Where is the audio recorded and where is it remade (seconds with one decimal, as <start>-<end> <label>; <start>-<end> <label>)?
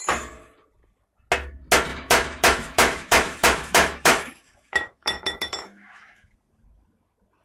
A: 0.0-1.9 recorded; 1.9-6.3 remade; 6.3-7.4 recorded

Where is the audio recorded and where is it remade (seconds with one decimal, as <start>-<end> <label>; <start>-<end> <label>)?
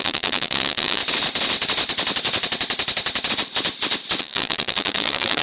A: 0.0-1.0 remade; 1.0-4.2 recorded; 4.2-5.4 remade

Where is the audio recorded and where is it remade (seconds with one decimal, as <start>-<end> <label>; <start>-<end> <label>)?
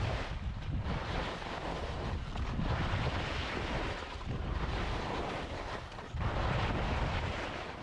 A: 0.0-1.0 remade; 1.0-3.7 recorded; 3.7-6.4 remade; 6.4-7.2 recorded; 7.2-7.8 remade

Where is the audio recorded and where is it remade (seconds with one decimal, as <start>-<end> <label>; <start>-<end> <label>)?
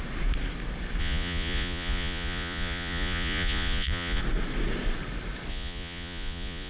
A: 0.0-1.0 recorded; 1.0-4.2 remade; 4.2-5.5 recorded; 5.5-6.7 remade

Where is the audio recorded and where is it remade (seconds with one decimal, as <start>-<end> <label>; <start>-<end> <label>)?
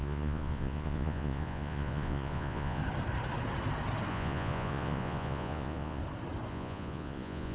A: 0.0-2.8 remade; 2.8-4.1 recorded; 4.1-6.0 remade; 6.0-6.5 recorded; 6.5-7.5 remade